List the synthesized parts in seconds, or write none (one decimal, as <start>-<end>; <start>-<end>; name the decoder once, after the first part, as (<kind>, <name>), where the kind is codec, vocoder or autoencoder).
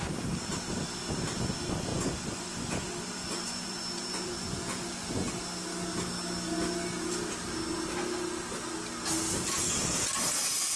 1.9-5.3 (vocoder, Vocos)